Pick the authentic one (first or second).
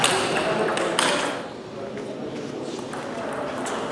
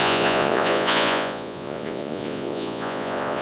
first